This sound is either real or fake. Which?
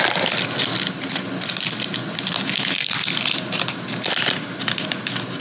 real